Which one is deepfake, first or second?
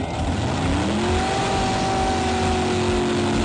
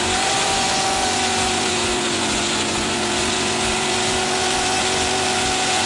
second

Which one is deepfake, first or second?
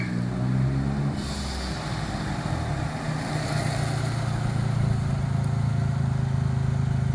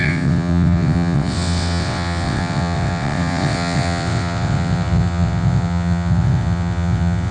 second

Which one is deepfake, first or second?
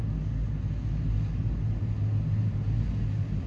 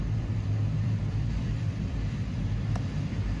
second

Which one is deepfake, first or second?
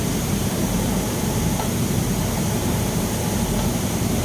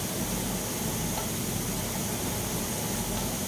first